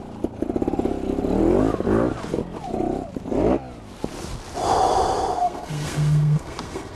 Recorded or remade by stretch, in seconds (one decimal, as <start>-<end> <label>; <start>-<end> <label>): 0.0-5.4 recorded; 5.4-7.0 remade